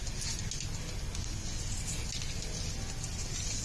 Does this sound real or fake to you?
real